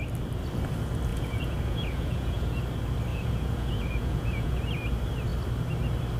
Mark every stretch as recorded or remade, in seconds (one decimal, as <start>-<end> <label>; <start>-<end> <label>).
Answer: 0.0-1.1 recorded; 1.1-2.6 remade; 2.6-3.1 recorded; 3.1-4.6 remade; 4.6-6.2 recorded